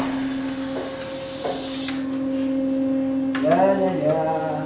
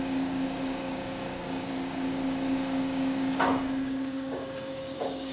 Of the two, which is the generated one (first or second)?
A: second